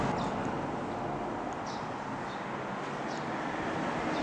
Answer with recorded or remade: recorded